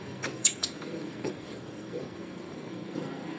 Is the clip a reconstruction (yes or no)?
yes